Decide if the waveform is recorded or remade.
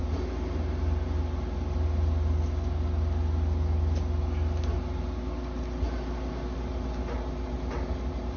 recorded